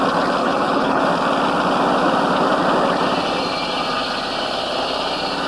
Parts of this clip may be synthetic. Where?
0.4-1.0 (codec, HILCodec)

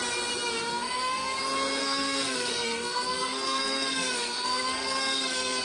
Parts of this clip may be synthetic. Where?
0.7-1.4 (codec, SNAC); 1.8-5.6

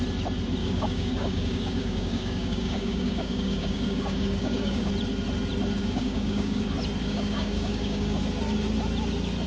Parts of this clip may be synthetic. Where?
0.6-4.9 (codec, DAC); 5.8-6.6; 7.0-8.2